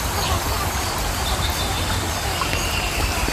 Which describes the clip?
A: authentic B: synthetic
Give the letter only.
A